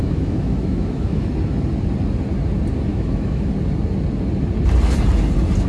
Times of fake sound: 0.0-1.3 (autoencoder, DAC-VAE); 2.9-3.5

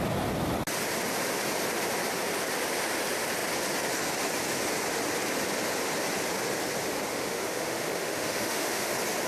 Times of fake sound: 7.1-8.9 (autoencoder, DAC-VAE)

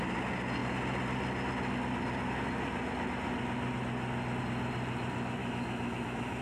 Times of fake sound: 5.4-6.4 (autoencoder, DAC-VAE)

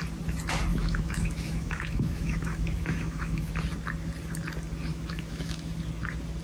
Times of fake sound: 0.7-3.5 (autoencoder, DAC-VAE); 4.9-5.7

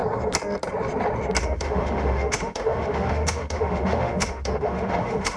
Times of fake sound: 1.4-5.4 (autoencoder, DAC-VAE)